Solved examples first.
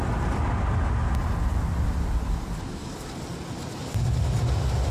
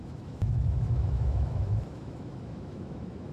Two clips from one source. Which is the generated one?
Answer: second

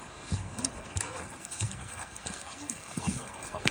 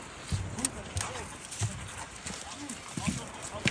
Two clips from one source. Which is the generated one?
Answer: first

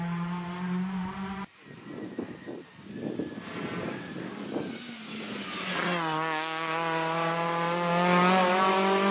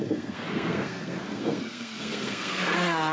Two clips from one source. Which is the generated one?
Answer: second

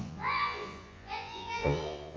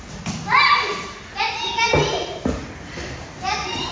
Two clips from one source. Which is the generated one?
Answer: first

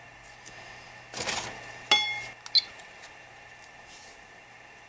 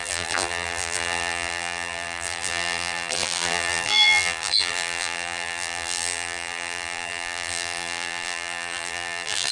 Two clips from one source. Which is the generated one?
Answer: second